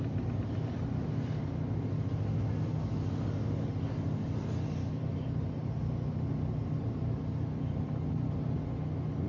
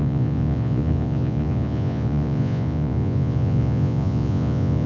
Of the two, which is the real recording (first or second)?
first